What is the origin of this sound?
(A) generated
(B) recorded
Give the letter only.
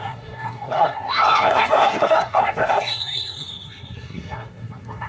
A